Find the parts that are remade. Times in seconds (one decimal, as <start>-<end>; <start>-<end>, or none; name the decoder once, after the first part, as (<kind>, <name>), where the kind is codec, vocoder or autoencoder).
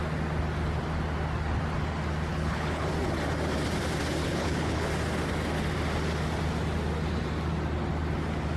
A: 2.3-2.9 (codec, HILCodec); 4.2-4.9